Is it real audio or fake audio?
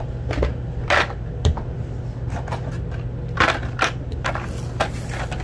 real